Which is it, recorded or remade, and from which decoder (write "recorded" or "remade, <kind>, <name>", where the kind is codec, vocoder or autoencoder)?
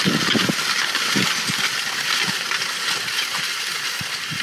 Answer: recorded